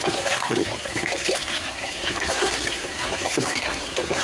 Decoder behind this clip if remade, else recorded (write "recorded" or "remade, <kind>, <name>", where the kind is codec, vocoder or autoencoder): remade, codec, SNAC